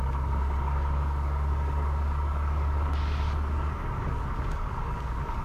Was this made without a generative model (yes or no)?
no